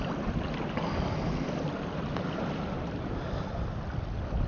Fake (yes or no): no